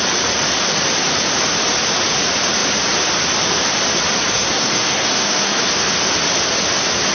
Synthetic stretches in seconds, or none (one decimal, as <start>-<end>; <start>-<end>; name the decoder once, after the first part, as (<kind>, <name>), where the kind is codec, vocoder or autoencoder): 4.3-5.7 (codec, SNAC)